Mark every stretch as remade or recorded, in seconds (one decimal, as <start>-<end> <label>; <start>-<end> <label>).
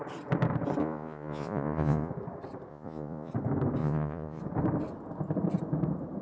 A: 0.0-0.8 recorded; 0.8-2.1 remade; 2.1-2.7 recorded; 2.7-3.3 remade; 3.3-3.8 recorded; 3.8-4.4 remade; 4.4-6.2 recorded